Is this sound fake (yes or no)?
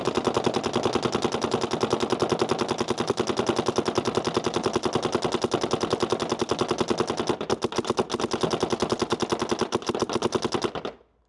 no